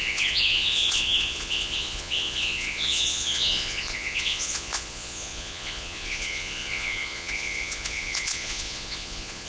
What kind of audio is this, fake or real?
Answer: fake